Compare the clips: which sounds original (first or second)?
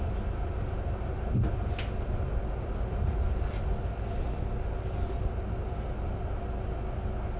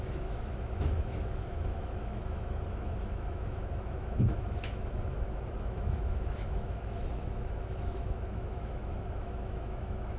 first